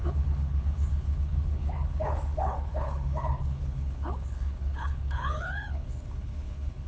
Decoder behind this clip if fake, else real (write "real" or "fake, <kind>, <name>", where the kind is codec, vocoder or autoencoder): fake, codec, HILCodec